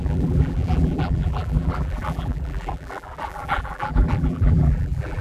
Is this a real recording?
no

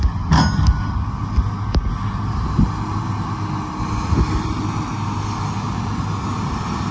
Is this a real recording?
yes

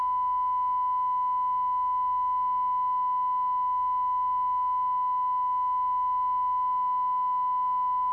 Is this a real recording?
yes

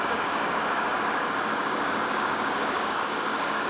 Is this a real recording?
no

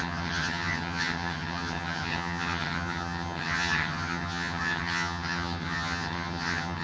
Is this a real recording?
no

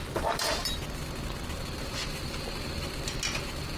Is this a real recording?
yes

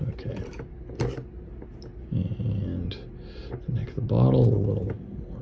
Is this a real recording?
yes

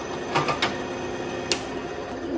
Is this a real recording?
yes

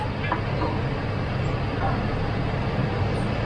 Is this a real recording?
yes